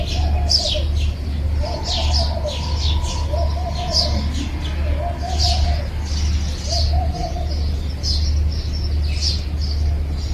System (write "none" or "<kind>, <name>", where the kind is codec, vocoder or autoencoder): none